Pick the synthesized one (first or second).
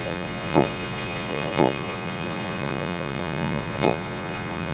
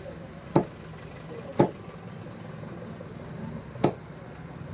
first